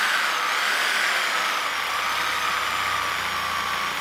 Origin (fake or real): real